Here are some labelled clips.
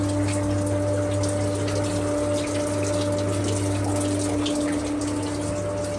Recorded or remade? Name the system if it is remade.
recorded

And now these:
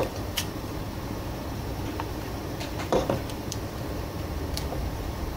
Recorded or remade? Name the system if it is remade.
remade, vocoder, BigVGAN v2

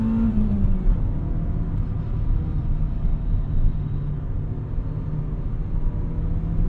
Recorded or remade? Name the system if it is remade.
recorded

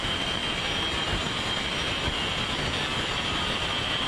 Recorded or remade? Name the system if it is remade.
remade, vocoder, BigVGAN v2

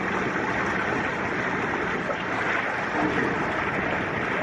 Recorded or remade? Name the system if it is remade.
recorded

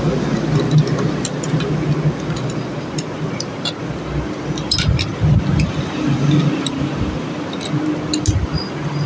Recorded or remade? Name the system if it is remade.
recorded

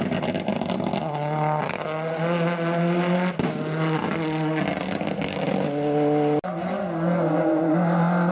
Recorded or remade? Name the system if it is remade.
recorded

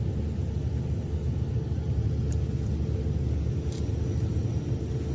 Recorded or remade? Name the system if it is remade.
recorded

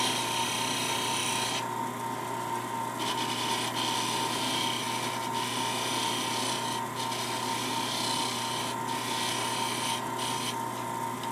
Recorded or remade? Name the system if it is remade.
recorded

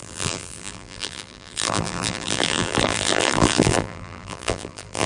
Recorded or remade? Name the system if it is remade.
remade, vocoder, BigVGAN v2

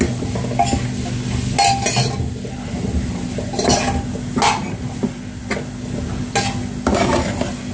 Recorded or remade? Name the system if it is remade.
recorded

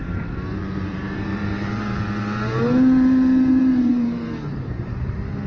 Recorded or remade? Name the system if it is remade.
remade, vocoder, BigVGAN v2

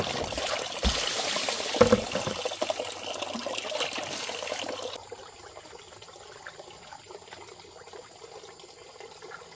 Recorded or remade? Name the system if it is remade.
recorded